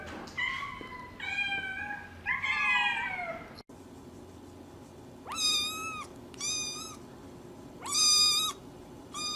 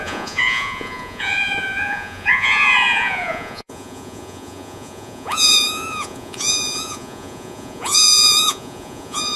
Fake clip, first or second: second